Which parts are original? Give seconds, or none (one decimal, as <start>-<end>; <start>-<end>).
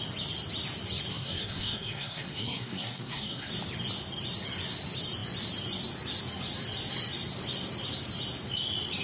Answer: 0.0-1.1; 3.5-9.0